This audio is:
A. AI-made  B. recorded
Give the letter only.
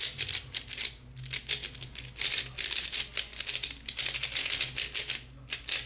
B